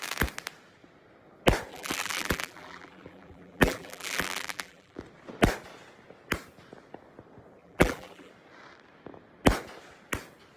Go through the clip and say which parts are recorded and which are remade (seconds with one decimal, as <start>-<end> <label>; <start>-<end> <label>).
0.0-1.7 recorded; 1.7-5.0 remade; 5.0-7.6 recorded; 7.6-8.3 remade; 8.3-10.6 recorded